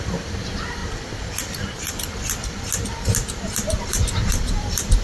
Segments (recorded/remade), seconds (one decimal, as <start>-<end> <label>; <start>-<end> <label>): 0.0-0.8 remade; 0.8-3.8 recorded; 3.8-5.0 remade